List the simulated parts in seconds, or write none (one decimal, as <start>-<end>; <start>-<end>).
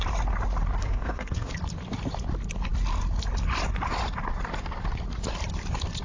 0.8-1.5